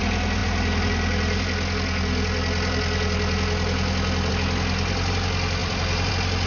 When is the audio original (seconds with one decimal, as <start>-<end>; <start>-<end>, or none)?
0.0-5.6; 6.1-6.5